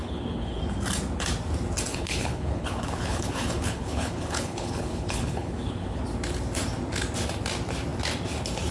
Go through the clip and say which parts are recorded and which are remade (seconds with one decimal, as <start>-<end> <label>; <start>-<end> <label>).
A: 0.0-0.6 remade; 0.6-1.9 recorded; 1.9-6.0 remade; 6.0-8.7 recorded